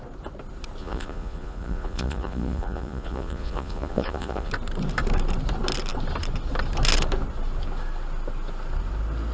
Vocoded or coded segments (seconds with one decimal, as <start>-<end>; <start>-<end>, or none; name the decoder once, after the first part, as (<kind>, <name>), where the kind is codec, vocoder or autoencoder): 0.8-4.5 (vocoder, Vocos)